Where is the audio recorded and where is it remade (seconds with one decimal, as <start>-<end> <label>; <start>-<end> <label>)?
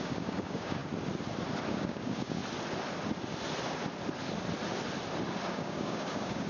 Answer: 0.0-0.8 remade; 0.8-1.7 recorded; 1.7-2.4 remade; 2.4-5.5 recorded; 5.5-6.5 remade